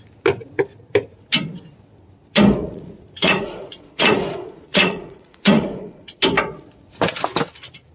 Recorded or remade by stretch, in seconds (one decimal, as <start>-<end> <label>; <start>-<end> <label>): 0.0-2.6 recorded; 2.6-6.2 remade; 6.2-7.9 recorded